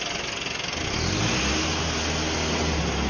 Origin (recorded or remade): recorded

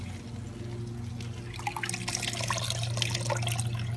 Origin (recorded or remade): recorded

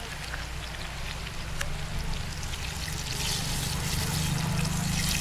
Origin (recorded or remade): recorded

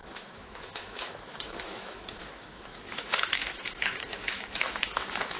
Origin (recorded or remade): remade